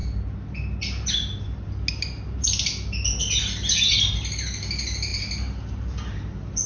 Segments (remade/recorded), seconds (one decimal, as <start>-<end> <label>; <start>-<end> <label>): 0.0-6.7 recorded